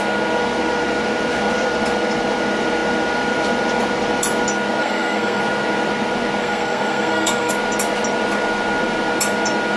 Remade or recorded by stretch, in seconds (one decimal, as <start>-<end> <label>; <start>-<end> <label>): 0.0-4.8 recorded; 4.8-5.4 remade; 5.4-6.4 recorded; 6.4-7.5 remade; 7.5-9.8 recorded